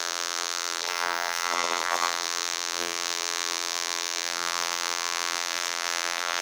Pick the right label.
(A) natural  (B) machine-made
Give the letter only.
B